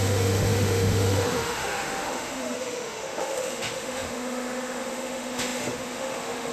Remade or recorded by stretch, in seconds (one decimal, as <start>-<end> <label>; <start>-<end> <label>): 0.0-6.5 remade